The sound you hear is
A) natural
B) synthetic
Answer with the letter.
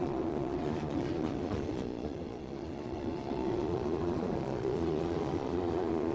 B